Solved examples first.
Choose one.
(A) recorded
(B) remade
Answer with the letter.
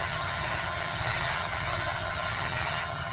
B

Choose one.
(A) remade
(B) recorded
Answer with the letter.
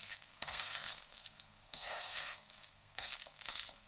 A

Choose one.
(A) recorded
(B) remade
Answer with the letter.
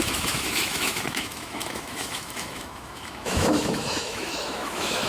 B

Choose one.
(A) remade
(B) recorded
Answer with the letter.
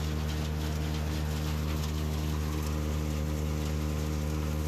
B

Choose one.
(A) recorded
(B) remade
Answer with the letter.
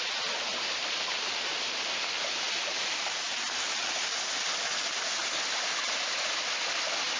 A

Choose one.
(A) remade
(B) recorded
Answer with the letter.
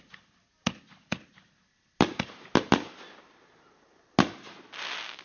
B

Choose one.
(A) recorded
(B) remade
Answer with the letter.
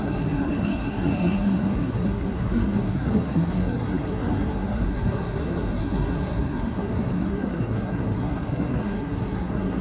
B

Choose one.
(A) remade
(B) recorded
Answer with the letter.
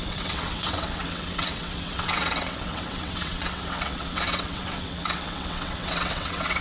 A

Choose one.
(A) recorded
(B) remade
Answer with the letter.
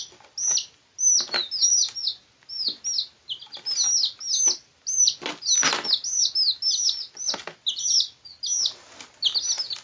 A